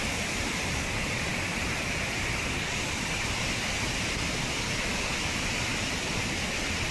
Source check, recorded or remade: recorded